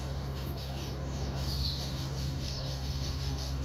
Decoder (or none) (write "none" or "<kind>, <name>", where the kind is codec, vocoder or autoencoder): codec, DAC